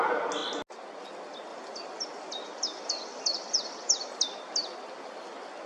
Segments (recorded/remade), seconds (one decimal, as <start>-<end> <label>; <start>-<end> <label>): 0.0-1.5 recorded; 1.5-4.2 remade; 4.2-5.7 recorded